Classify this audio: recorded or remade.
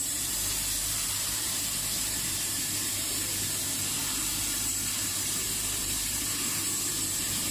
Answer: remade